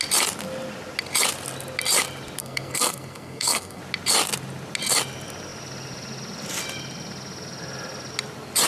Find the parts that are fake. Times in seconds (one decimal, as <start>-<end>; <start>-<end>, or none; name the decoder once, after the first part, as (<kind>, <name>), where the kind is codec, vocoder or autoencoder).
2.4-3.8 (codec, SNAC)